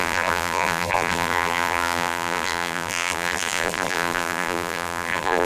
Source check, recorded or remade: remade